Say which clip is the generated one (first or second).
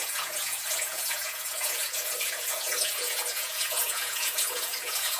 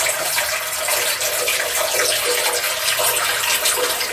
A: first